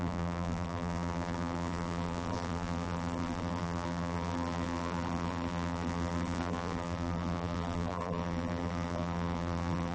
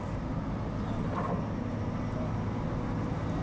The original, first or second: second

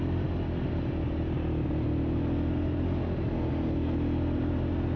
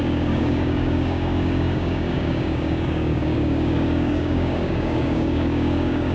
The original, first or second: first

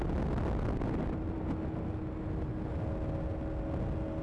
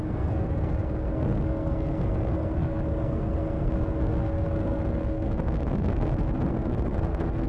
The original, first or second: first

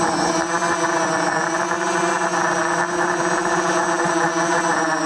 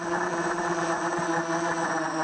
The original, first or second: first